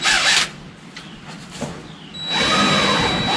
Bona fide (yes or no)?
yes